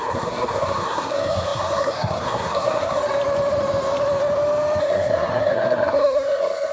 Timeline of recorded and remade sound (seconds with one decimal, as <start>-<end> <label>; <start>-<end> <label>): 0.0-3.0 remade; 3.0-4.8 recorded; 4.8-6.7 remade